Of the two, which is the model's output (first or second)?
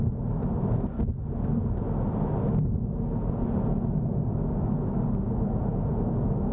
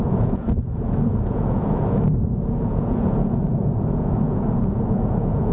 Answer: second